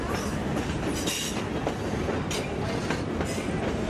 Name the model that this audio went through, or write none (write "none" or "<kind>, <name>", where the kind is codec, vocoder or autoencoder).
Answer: none